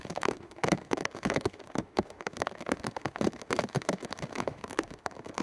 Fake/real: fake